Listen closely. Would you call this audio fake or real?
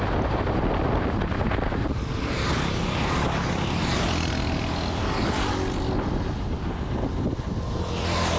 real